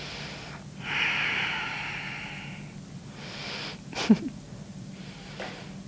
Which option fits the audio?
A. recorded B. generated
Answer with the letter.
A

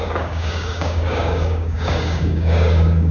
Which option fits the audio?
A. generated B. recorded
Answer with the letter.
A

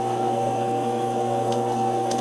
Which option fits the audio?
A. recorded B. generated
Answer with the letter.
B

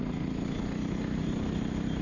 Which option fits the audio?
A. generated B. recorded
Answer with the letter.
B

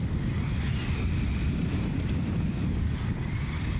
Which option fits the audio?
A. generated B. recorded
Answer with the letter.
B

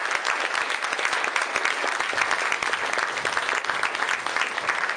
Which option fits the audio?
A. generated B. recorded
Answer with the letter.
B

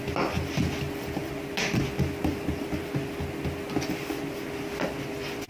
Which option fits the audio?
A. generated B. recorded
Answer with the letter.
B